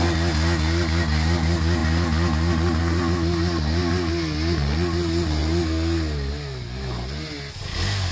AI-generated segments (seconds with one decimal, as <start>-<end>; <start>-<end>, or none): none